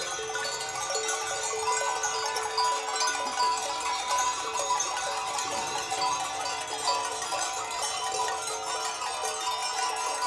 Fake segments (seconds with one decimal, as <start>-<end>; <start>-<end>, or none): 3.6-6.4; 7.1-8.3